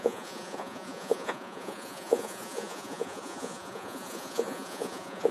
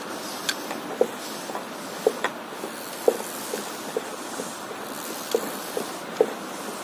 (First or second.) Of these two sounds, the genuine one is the second